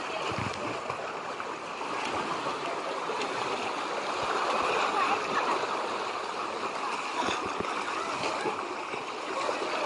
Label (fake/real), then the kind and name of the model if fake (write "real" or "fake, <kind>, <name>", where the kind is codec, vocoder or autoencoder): real